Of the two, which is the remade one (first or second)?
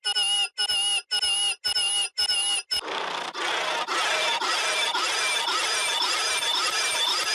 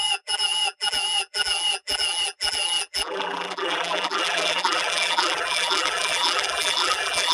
second